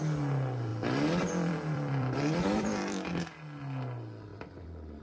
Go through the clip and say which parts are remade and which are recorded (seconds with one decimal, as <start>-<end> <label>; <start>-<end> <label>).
0.0-0.7 recorded; 0.7-3.1 remade; 3.1-4.3 recorded; 4.3-5.0 remade